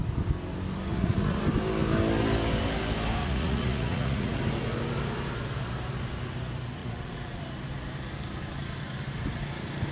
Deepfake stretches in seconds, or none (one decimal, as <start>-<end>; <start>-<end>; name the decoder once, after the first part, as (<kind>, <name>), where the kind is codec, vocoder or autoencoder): 0.9-1.4 (vocoder, Vocos); 3.2-4.4; 6.8-7.4